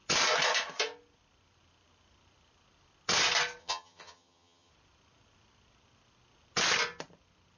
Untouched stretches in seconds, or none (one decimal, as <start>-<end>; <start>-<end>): 0.0-3.6; 4.7-7.6